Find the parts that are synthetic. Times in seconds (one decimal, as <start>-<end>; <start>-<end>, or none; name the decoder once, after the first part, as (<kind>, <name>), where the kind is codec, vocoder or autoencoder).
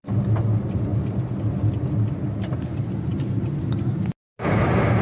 none